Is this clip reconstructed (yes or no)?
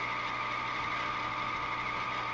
no